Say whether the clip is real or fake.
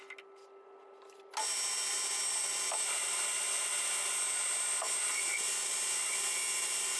real